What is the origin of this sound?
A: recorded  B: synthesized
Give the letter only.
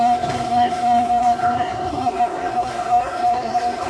B